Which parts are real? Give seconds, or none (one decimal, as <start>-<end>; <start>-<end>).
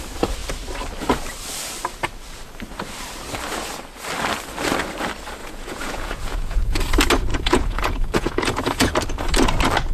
0.0-5.4; 6.8-7.3; 8.9-9.9